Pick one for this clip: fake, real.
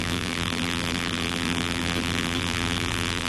fake